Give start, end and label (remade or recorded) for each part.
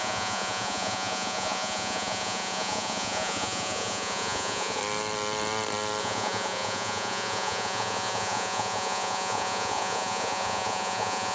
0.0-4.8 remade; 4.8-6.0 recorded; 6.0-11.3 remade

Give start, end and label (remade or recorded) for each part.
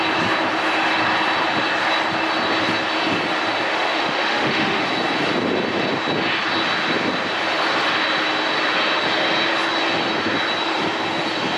0.0-3.7 recorded; 3.7-4.8 remade; 4.8-11.6 recorded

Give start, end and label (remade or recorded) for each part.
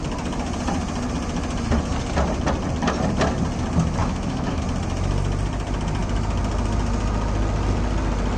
0.0-4.0 recorded; 4.0-4.6 remade; 4.6-8.4 recorded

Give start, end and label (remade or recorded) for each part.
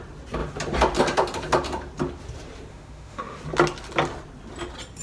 0.0-2.7 recorded; 2.7-3.4 remade; 3.4-5.0 recorded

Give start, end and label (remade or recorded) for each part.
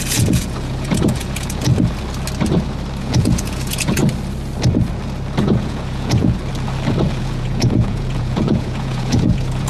0.0-1.7 remade; 1.7-3.0 recorded; 3.0-4.0 remade; 4.0-5.4 recorded; 5.4-6.4 remade; 6.4-7.2 recorded; 7.2-9.7 remade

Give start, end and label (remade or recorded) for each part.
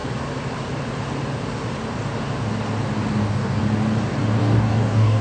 0.0-3.1 recorded; 3.1-3.6 remade; 3.6-4.4 recorded; 4.4-5.2 remade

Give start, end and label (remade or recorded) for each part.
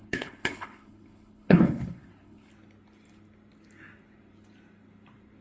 0.0-2.5 remade; 2.5-5.4 recorded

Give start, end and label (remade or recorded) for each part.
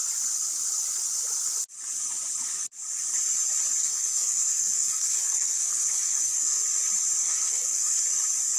0.0-3.8 recorded; 3.8-6.6 remade; 6.6-7.2 recorded; 7.2-8.0 remade; 8.0-8.6 recorded